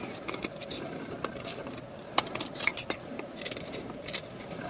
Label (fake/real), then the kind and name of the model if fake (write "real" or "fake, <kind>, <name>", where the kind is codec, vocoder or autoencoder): real